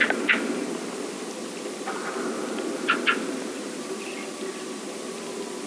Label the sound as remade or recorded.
recorded